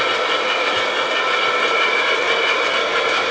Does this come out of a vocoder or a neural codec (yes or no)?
no